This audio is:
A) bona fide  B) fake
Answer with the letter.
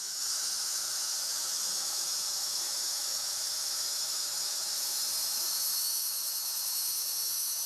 B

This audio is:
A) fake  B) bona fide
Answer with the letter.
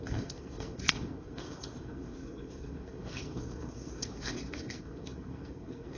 A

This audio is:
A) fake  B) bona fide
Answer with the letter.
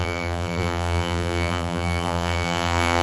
A